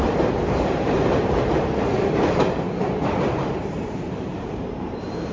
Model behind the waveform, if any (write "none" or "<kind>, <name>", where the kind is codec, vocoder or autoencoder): vocoder, BigVGAN v2